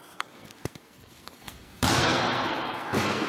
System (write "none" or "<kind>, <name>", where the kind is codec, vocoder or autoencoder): codec, SNAC